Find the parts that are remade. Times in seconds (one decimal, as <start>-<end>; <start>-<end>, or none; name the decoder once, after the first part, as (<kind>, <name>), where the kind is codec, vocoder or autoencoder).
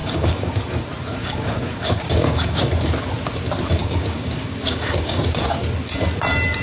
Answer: 0.0-0.6 (codec, DAC); 1.2-2.7; 3.8-5.4